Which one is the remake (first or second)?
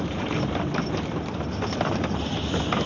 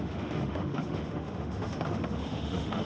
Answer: second